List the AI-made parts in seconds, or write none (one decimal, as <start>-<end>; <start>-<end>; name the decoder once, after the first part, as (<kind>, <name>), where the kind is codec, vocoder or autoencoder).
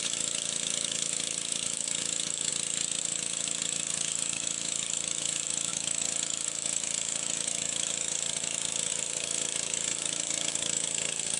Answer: 0.0-2.5 (codec, DAC); 3.0-11.4